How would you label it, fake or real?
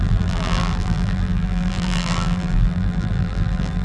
fake